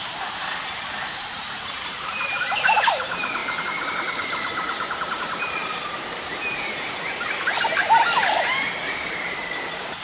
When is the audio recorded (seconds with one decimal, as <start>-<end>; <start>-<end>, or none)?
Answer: 3.4-4.1; 7.8-8.3